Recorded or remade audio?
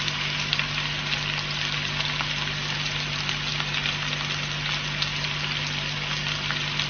recorded